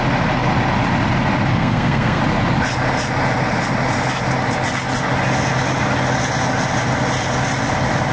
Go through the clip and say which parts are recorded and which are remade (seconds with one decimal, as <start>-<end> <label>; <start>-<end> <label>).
0.0-1.5 recorded; 1.5-2.2 remade; 2.2-8.1 recorded